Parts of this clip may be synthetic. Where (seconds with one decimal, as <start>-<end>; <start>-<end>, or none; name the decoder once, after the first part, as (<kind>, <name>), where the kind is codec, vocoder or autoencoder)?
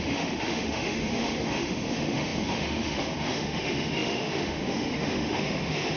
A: 0.0-6.0 (autoencoder, DAC-VAE)